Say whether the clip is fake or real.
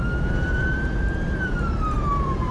fake